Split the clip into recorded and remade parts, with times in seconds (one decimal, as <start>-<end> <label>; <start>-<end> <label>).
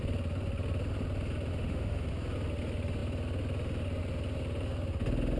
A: 0.0-1.5 recorded; 1.5-2.1 remade; 2.1-5.4 recorded